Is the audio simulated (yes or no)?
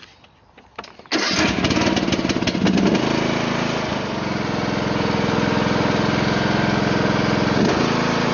no